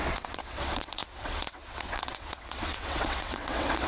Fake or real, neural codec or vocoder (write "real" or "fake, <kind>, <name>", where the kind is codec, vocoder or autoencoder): fake, vocoder, WaveNeXt